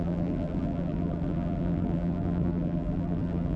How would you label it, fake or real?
fake